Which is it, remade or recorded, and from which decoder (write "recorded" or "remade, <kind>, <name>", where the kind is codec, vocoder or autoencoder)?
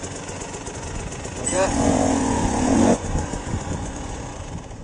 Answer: remade, vocoder, Vocos